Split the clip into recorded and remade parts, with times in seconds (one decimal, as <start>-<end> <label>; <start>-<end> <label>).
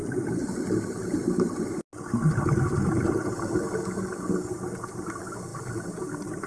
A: 0.0-3.9 recorded; 3.9-5.5 remade; 5.5-6.5 recorded